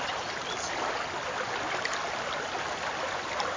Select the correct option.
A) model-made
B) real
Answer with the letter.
B